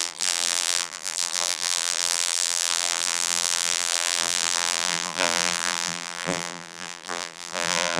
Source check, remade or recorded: remade